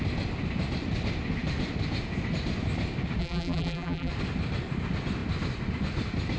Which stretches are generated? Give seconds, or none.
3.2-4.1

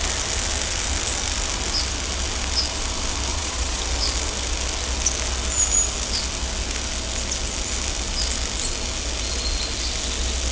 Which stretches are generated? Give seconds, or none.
3.3-3.8

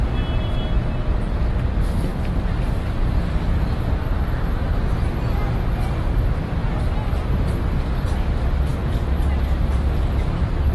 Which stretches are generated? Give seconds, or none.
2.1-3.6

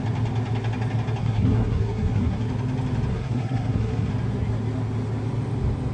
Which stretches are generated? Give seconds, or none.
1.2-2.5; 3.1-4.1